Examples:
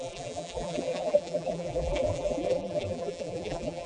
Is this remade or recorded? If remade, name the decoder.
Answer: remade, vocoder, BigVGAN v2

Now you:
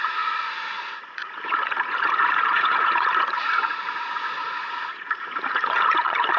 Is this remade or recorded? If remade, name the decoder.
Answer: remade, vocoder, Vocos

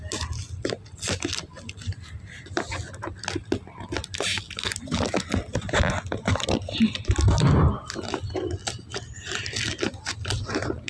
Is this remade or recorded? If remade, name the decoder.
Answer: recorded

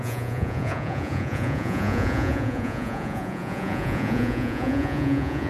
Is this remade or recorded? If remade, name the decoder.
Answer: remade, vocoder, Vocos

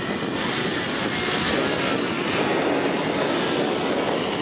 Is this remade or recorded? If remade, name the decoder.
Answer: recorded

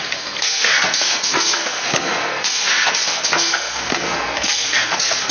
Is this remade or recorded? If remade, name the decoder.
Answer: remade, codec, SNAC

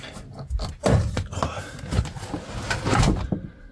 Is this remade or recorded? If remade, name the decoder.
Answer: recorded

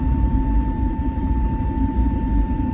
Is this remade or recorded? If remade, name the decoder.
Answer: remade, vocoder, BigVGAN v2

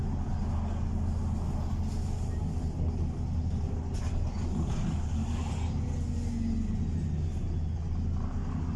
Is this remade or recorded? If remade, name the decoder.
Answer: recorded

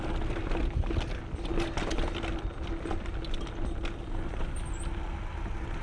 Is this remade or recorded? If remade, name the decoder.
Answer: recorded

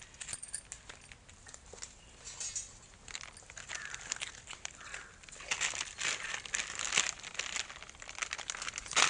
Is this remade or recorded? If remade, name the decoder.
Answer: recorded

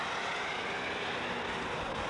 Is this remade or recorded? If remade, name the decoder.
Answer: recorded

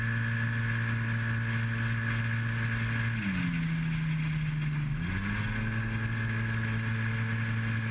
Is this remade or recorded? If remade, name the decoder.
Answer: recorded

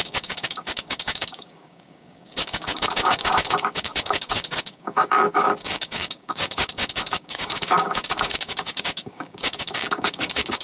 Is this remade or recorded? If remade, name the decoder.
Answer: remade, codec, DAC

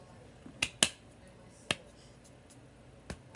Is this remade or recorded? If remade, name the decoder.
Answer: recorded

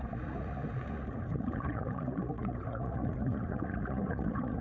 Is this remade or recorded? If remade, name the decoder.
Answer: remade, vocoder, Vocos